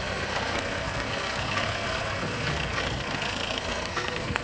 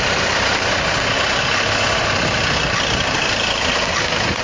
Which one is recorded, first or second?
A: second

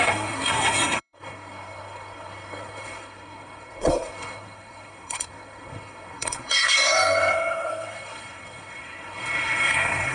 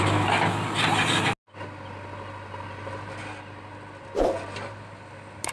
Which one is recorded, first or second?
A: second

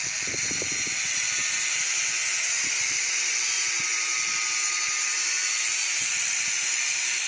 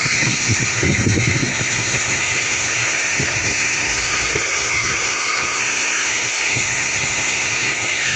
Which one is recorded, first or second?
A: first